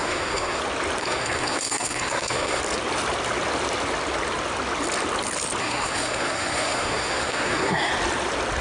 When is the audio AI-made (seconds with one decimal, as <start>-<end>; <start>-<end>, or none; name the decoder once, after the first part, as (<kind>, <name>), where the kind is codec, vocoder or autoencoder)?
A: 0.0-0.6 (codec, SNAC); 1.0-2.6; 5.6-7.9